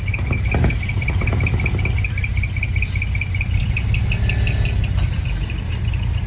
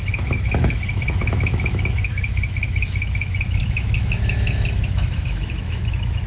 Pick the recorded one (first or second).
first